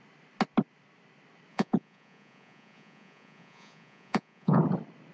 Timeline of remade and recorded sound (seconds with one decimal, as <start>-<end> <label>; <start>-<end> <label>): 0.0-1.5 recorded; 1.5-4.6 remade; 4.6-5.1 recorded